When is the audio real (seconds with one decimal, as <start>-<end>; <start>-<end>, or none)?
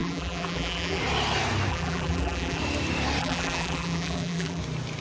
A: 1.0-1.7; 2.6-3.2; 4.6-5.0